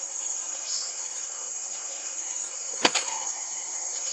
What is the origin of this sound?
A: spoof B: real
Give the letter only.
A